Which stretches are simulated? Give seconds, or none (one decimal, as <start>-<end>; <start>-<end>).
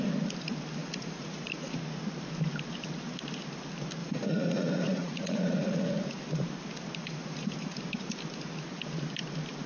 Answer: 0.8-1.7; 4.0-5.9; 7.0-7.8